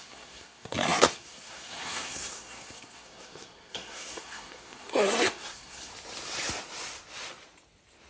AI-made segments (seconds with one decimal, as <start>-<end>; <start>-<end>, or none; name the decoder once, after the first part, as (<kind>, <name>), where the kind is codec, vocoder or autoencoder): 0.0-5.9 (codec, SNAC)